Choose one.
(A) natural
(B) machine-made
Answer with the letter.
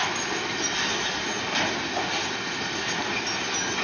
A